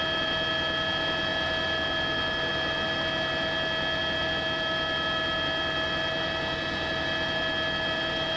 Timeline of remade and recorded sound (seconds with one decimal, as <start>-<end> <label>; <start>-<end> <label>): 0.0-8.4 recorded